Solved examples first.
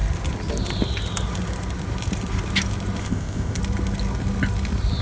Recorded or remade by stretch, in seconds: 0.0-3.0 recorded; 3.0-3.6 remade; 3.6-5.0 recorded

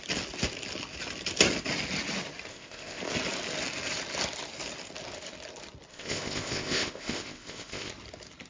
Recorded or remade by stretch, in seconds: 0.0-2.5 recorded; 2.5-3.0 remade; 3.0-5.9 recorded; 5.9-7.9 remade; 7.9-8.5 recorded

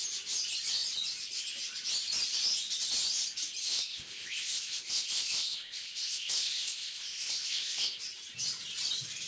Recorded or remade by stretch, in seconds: 0.0-3.6 recorded; 3.6-8.0 remade; 8.0-9.3 recorded